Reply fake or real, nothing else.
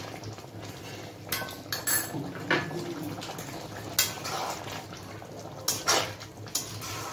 real